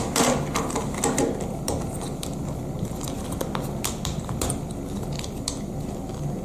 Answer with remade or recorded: recorded